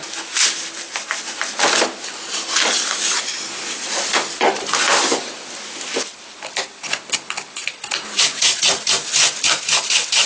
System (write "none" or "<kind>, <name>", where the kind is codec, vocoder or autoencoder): none